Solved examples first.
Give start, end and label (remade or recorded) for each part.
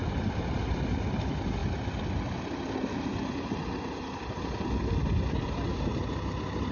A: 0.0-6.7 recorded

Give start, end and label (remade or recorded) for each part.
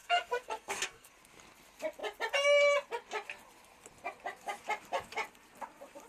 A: 0.0-1.1 remade; 1.1-6.1 recorded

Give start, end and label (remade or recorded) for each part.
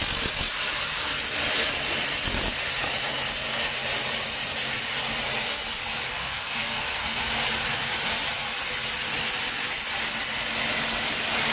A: 0.0-6.1 recorded; 6.1-7.3 remade; 7.3-11.5 recorded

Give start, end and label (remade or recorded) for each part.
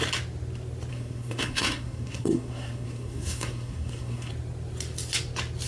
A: 0.0-0.9 recorded; 0.9-4.3 remade; 4.3-5.7 recorded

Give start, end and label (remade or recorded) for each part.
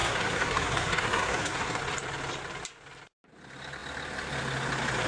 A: 0.0-1.8 remade; 1.8-5.1 recorded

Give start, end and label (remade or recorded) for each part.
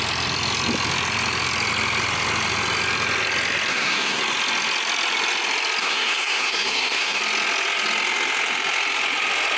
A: 0.0-3.7 recorded; 3.7-4.2 remade; 4.2-5.8 recorded; 5.8-7.2 remade; 7.2-9.6 recorded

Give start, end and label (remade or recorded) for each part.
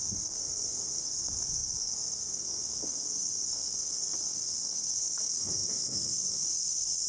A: 0.0-7.1 remade